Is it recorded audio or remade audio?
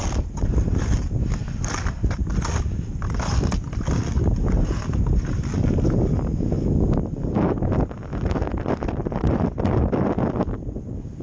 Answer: recorded